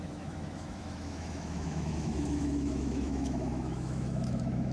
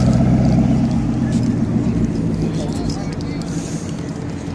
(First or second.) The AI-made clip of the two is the first